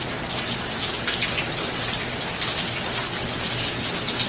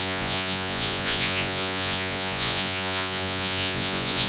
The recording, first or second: first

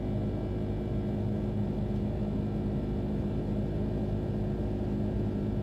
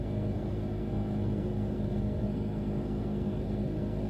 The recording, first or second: first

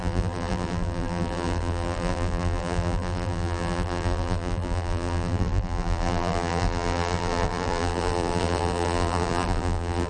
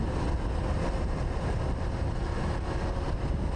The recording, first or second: second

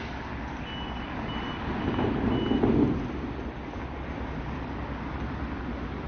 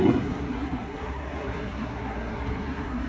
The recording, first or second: first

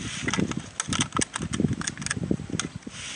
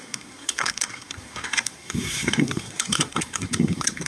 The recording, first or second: first